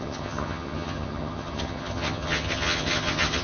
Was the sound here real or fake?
fake